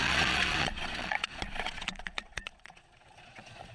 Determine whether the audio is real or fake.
fake